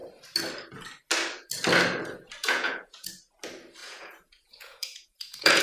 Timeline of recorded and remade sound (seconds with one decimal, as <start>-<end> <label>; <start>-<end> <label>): 0.0-2.4 recorded; 2.4-3.1 remade; 3.1-3.8 recorded; 3.8-5.6 remade

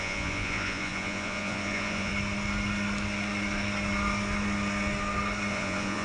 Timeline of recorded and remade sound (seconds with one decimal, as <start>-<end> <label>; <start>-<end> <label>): 0.0-2.1 remade; 2.1-5.5 recorded; 5.5-6.0 remade